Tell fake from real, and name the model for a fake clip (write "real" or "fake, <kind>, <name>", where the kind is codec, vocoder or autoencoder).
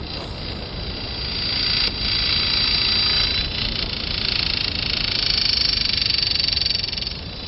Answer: real